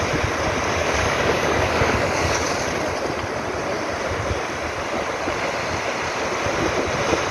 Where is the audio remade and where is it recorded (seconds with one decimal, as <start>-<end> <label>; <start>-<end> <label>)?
0.0-0.8 recorded; 0.8-2.5 remade; 2.5-7.3 recorded